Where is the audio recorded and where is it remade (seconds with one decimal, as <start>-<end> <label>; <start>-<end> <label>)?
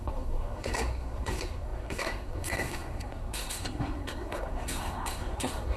0.0-5.8 remade